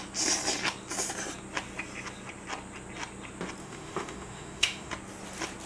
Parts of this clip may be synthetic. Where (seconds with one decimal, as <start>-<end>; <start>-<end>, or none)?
3.6-4.9